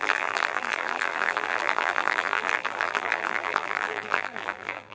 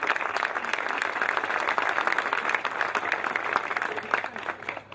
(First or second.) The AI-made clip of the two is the first